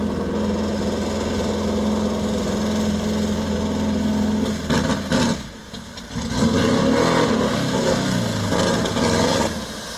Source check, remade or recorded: recorded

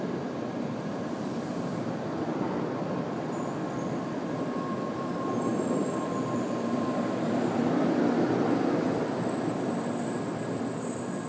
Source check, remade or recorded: remade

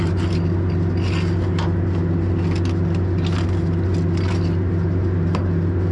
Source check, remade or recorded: recorded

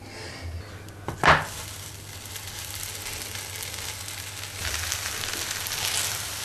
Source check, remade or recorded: recorded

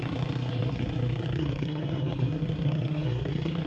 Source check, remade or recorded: remade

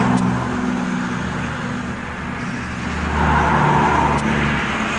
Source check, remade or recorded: recorded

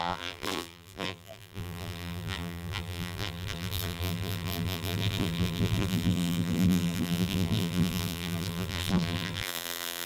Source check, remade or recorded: remade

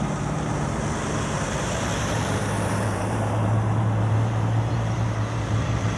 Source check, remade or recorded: remade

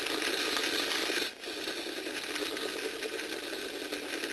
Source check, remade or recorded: recorded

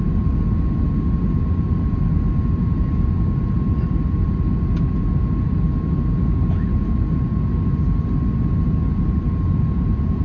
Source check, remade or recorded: recorded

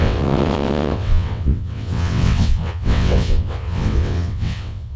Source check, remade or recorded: remade